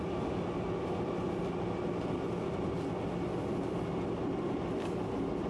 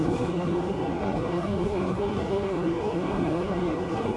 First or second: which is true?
first